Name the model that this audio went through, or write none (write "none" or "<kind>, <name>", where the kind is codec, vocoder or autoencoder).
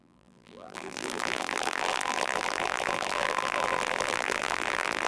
vocoder, BigVGAN v2